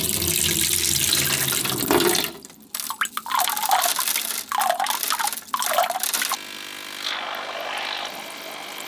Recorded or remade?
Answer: recorded